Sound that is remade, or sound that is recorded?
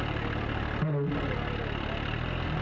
recorded